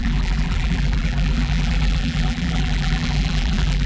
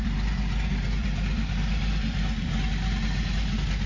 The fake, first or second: first